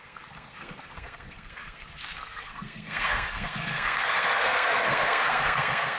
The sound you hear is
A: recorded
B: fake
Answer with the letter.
B